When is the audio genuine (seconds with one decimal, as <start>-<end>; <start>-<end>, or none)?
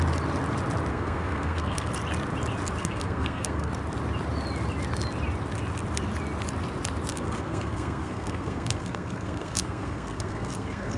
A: 0.0-0.9; 1.9-2.8; 3.7-7.1